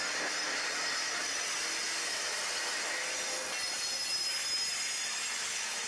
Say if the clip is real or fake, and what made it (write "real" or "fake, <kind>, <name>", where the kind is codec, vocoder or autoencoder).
real